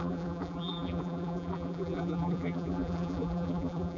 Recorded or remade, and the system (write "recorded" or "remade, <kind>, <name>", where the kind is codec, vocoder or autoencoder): remade, vocoder, BigVGAN v2